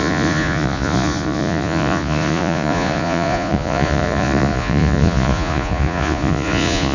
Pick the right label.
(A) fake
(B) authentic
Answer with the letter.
A